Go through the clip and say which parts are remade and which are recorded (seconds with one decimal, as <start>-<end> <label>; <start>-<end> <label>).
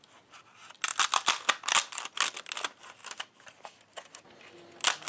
0.0-5.1 recorded